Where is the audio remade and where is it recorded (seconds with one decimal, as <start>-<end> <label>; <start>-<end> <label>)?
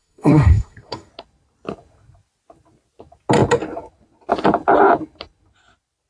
0.0-1.1 remade; 1.1-6.1 recorded